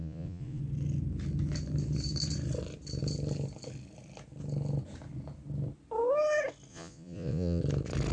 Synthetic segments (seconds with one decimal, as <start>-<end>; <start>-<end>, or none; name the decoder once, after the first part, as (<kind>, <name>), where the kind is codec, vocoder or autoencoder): 0.0-0.6 (vocoder, Vocos); 6.7-7.6